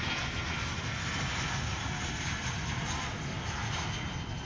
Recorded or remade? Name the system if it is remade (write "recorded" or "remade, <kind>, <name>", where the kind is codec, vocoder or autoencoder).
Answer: recorded